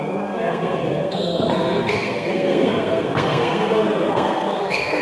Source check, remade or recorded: remade